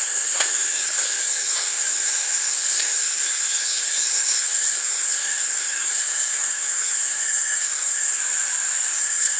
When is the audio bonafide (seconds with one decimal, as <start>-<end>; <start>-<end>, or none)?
8.2-9.0